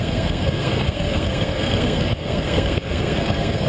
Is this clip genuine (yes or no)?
no